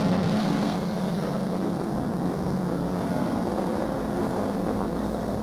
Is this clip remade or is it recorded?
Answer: remade